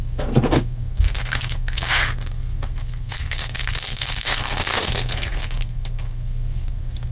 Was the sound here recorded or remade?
remade